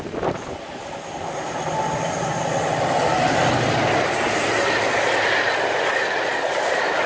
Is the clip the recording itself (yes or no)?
yes